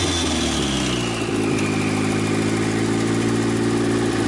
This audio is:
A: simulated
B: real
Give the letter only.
B